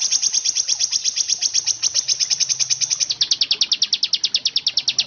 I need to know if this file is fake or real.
real